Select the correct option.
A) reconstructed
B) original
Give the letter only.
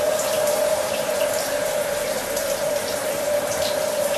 A